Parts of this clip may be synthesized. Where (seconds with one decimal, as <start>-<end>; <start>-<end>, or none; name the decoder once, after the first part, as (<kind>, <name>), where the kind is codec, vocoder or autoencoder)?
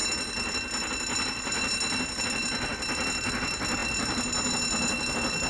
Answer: none